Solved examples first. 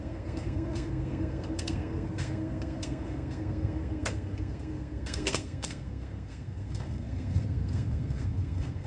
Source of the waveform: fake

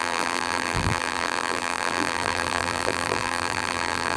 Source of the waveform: fake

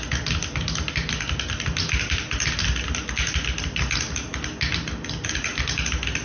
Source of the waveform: real